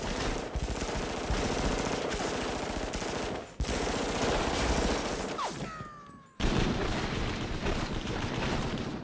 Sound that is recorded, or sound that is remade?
recorded